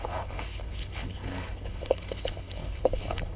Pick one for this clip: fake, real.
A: fake